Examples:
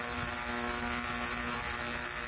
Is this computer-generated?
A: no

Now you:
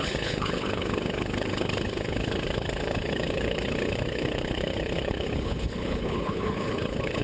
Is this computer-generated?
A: yes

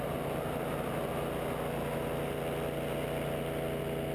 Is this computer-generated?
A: no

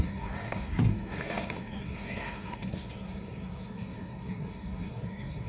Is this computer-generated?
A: yes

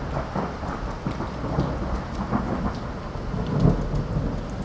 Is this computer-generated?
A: no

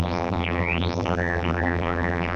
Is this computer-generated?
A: yes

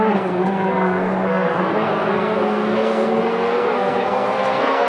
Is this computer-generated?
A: yes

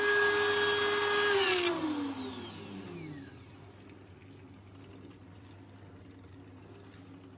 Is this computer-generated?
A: no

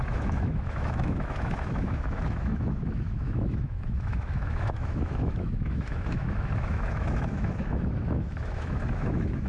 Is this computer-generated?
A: yes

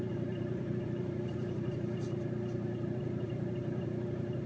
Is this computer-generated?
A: yes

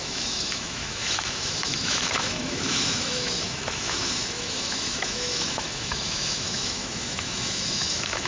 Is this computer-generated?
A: yes